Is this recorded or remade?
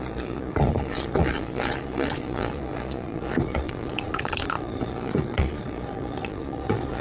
remade